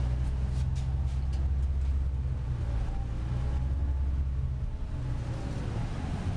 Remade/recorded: recorded